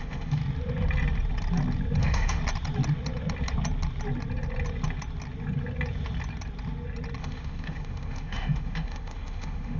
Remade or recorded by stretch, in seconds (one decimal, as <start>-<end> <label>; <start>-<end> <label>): 0.0-0.4 remade; 0.4-2.0 recorded; 2.0-2.4 remade; 2.4-7.2 recorded; 7.2-9.8 remade